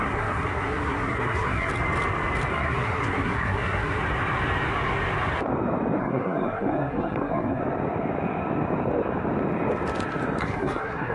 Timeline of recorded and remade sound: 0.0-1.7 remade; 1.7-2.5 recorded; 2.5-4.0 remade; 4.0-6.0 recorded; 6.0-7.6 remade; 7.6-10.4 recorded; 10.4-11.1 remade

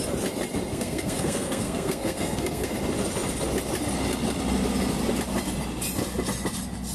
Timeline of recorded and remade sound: 0.0-0.7 recorded; 0.7-2.7 remade; 2.7-6.9 recorded

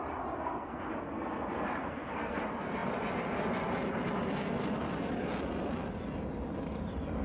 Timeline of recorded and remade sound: 0.0-0.4 recorded; 0.4-0.9 remade; 0.9-1.8 recorded; 1.8-2.4 remade; 2.4-7.2 recorded

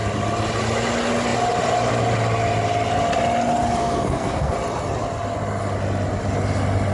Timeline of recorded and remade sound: 0.0-3.8 recorded; 3.8-4.5 remade; 4.5-6.9 recorded